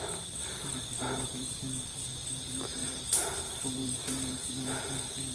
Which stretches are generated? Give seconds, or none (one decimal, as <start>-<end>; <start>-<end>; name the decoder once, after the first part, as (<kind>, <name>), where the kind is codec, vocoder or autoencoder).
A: 0.4-1.9 (vocoder, BigVGAN v2); 2.8-4.5